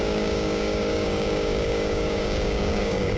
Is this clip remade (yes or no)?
yes